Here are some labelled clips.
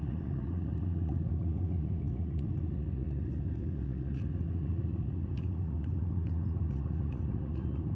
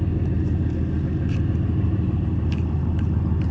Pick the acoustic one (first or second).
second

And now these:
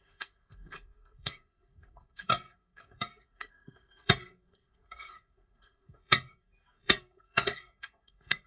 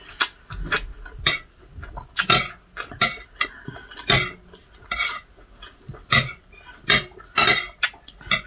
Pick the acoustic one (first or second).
second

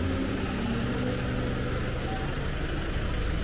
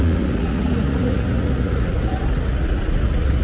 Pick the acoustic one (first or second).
first